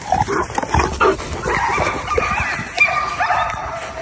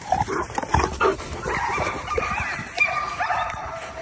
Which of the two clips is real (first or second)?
first